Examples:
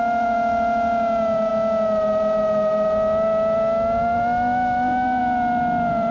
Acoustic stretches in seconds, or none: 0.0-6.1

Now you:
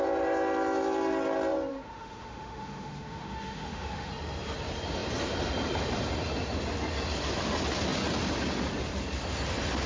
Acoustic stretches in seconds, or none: 0.0-1.7; 4.1-9.9